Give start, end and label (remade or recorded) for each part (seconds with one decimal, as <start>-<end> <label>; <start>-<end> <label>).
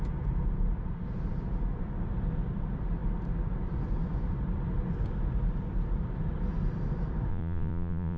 0.0-7.3 recorded; 7.3-8.2 remade